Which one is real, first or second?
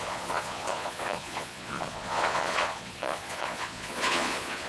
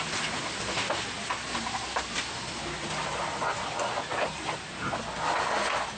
second